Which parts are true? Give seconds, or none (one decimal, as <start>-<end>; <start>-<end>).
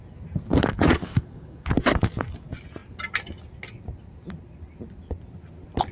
0.0-0.7; 1.7-5.9